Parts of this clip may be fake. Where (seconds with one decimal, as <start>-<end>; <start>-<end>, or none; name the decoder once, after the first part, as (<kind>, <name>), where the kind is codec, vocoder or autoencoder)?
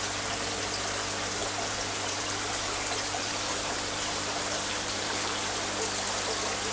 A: 1.4-5.4 (vocoder, BigVGAN v2)